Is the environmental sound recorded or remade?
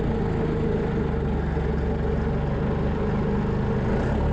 recorded